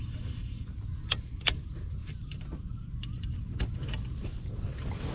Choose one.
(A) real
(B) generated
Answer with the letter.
A